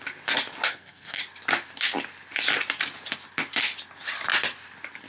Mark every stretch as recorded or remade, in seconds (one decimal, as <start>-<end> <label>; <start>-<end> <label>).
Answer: 0.0-0.7 recorded; 0.7-1.2 remade; 1.2-5.1 recorded